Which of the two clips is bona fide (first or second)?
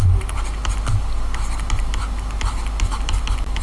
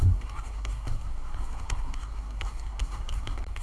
first